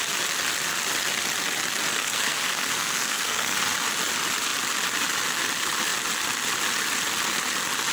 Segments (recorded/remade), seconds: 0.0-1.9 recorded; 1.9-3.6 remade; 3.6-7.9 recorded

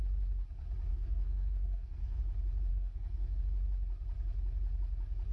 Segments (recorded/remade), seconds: 0.0-0.9 recorded; 0.9-2.2 remade; 2.2-2.7 recorded; 2.7-3.4 remade; 3.4-5.3 recorded

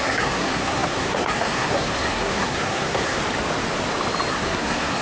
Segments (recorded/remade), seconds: 0.0-3.2 remade; 3.2-4.3 recorded; 4.3-5.0 remade

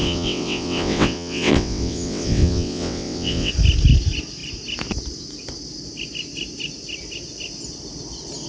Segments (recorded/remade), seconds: 0.0-3.5 remade; 3.5-8.5 recorded

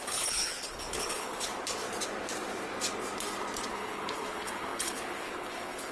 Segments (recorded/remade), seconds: 0.0-1.5 remade; 1.5-3.7 recorded; 3.7-5.9 remade

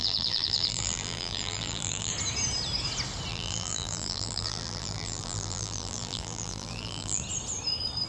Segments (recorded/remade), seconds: 0.0-2.1 remade; 2.1-3.3 recorded; 3.3-7.2 remade; 7.2-8.1 recorded